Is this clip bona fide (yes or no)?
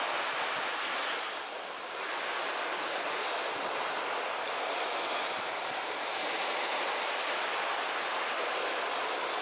yes